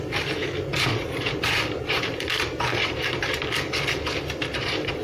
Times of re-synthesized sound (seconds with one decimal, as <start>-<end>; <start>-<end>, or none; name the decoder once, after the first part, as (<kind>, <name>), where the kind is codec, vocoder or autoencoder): 0.7-3.5 (vocoder, BigVGAN v2); 4.4-5.0